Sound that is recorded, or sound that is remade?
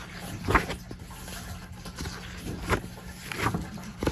recorded